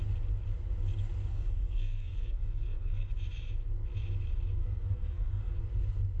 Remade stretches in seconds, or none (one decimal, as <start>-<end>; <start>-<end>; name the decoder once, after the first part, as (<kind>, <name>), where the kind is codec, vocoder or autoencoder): 1.3-3.1 (codec, SNAC); 4.6-5.5